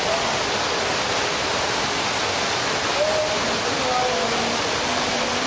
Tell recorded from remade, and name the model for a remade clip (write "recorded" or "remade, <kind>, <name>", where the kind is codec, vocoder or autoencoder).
recorded